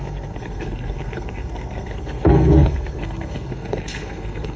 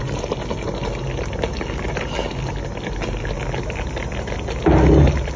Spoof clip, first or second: first